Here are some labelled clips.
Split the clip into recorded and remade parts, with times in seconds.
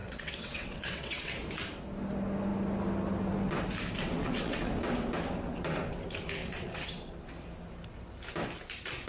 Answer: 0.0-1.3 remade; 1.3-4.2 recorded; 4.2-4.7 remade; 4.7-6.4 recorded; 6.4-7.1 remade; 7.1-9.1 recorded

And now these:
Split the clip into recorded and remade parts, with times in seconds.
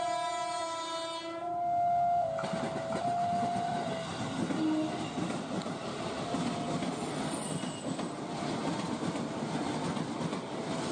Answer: 0.0-10.9 recorded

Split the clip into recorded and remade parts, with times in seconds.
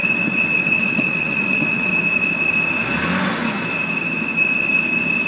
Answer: 0.0-1.9 remade; 1.9-5.3 recorded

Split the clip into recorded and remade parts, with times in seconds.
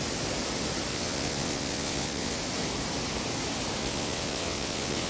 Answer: 0.0-0.9 recorded; 0.9-2.4 remade; 2.4-3.8 recorded; 3.8-5.1 remade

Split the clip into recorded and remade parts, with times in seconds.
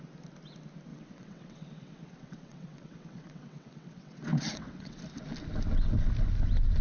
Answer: 0.0-0.9 recorded; 0.9-5.0 remade; 5.0-6.8 recorded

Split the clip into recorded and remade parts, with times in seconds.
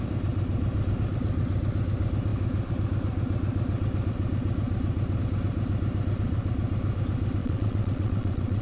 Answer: 0.0-7.4 recorded; 7.4-8.6 remade